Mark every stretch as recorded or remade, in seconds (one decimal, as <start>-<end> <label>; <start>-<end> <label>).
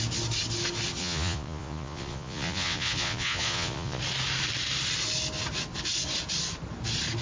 0.0-1.0 recorded; 1.0-4.0 remade; 4.0-7.2 recorded